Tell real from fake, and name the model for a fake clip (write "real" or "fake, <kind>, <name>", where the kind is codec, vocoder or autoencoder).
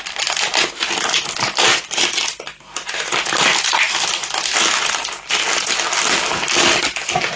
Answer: real